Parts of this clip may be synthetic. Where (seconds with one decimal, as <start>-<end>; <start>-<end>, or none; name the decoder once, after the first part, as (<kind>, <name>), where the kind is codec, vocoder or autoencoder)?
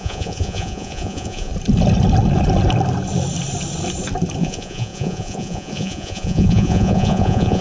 0.0-1.5 (vocoder, Vocos); 4.4-7.6